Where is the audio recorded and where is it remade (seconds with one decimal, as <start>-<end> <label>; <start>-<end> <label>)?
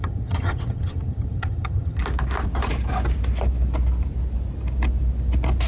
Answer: 0.0-2.0 remade; 2.0-5.7 recorded